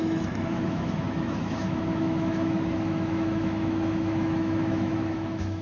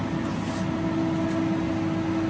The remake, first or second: first